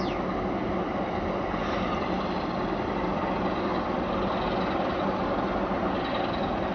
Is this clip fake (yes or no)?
no